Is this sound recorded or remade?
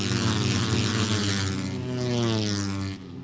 recorded